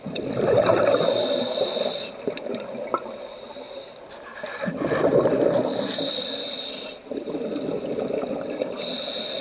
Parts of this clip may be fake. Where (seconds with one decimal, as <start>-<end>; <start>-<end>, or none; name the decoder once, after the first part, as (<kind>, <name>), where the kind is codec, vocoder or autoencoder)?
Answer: none

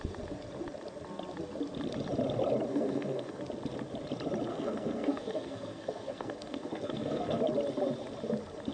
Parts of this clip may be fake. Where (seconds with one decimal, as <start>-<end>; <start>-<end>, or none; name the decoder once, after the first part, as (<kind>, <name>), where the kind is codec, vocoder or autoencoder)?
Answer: 2.7-3.4 (codec, SNAC); 4.5-7.4

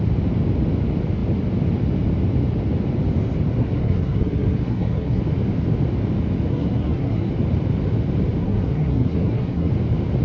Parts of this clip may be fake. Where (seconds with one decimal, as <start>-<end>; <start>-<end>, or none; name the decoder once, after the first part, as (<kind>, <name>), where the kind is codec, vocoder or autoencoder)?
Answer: 3.6-5.2 (codec, SNAC); 6.5-7.3; 8.4-9.7

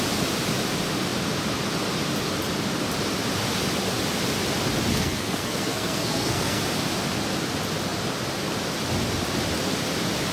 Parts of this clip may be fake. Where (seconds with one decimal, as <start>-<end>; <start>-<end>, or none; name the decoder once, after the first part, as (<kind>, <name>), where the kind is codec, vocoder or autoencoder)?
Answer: 4.9-6.6 (codec, SNAC)

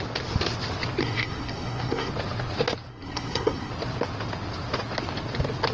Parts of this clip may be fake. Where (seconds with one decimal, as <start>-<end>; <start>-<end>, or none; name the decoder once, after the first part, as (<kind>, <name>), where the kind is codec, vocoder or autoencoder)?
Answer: 1.0-2.1 (codec, SNAC); 2.9-3.7